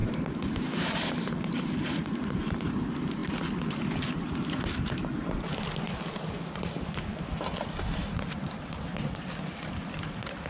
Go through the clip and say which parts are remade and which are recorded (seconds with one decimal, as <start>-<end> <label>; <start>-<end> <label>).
0.0-2.7 remade; 2.7-8.0 recorded; 8.0-8.7 remade; 8.7-10.5 recorded